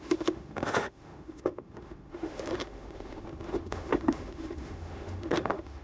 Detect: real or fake fake